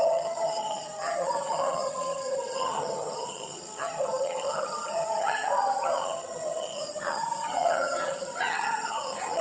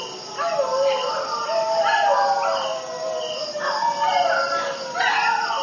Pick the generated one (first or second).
first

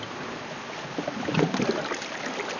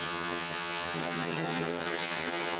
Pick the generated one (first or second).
second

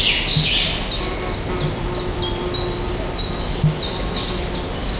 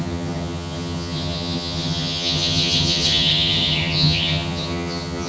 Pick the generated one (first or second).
second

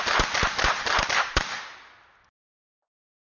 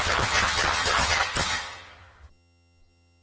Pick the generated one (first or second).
second